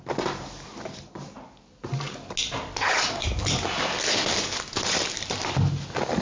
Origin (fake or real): real